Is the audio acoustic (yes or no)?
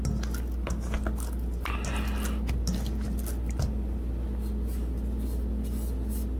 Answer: yes